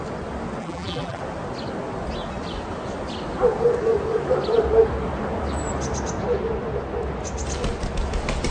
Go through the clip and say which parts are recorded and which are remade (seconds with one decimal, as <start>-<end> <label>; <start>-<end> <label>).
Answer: 0.0-0.6 recorded; 0.6-1.2 remade; 1.2-8.5 recorded